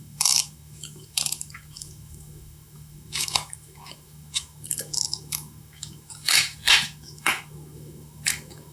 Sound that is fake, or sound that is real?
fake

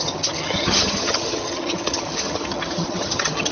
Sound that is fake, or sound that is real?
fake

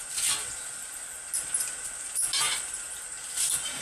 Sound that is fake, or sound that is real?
real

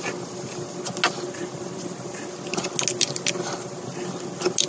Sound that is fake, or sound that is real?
real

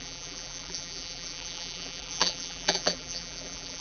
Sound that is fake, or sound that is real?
fake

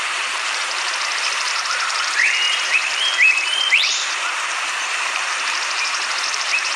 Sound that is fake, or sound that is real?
fake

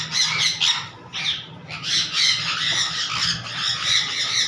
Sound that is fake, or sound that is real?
real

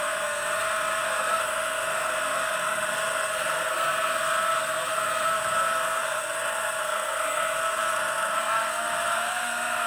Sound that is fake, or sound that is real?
fake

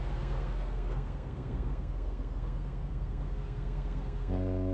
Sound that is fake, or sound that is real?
fake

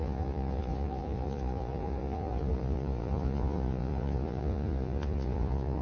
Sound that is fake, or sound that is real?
fake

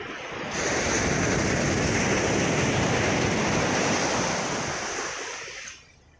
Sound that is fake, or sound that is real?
real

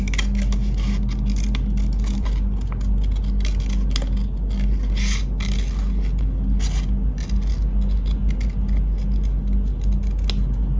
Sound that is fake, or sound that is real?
real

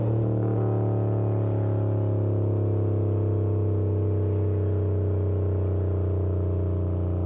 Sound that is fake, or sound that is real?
real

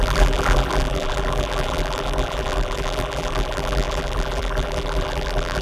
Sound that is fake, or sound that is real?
fake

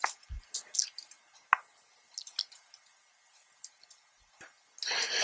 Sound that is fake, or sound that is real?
real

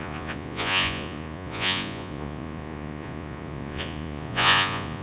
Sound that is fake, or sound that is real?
fake